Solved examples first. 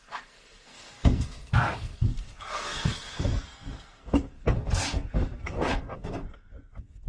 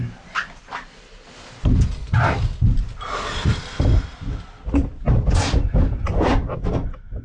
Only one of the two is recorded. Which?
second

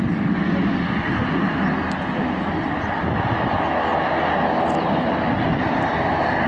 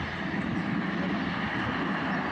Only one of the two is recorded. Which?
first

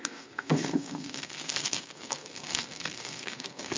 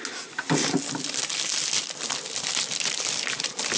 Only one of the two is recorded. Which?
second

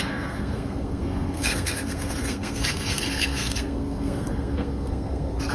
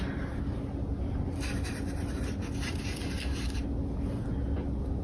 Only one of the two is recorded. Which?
second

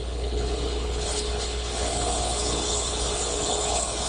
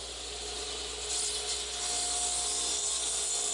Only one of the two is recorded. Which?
second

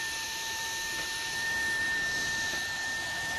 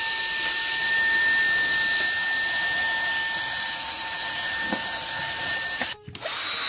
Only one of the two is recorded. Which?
second